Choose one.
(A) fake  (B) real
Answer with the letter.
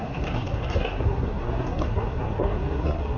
A